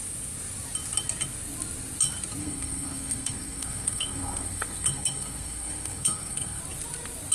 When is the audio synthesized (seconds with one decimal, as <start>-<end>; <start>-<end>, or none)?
2.4-6.6

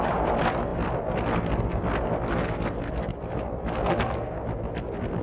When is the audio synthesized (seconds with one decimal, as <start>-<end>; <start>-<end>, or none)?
3.9-4.4

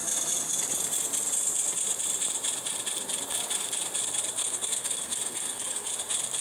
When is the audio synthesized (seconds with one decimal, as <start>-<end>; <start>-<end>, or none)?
4.4-5.9

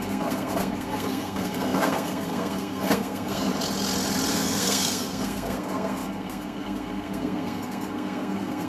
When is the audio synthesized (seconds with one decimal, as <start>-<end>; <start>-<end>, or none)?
0.0-3.5; 4.3-8.7

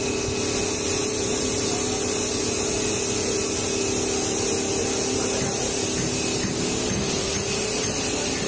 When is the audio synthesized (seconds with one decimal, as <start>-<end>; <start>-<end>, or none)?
none

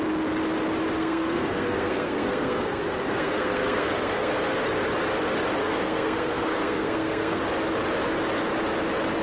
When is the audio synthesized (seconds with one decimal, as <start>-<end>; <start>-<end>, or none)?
1.0-4.3; 5.6-7.4

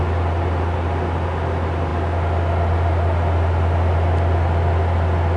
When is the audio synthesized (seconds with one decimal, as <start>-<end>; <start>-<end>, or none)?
none

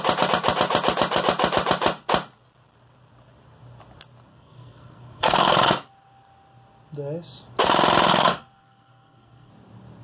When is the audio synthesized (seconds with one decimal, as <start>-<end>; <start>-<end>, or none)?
4.3-5.9; 8.1-9.5